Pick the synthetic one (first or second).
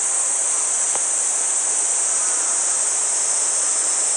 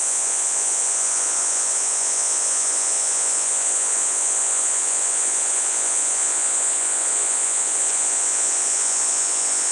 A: second